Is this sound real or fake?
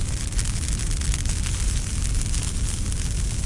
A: real